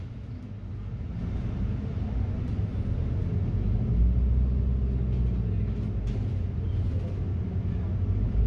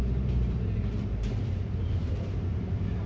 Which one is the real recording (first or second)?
first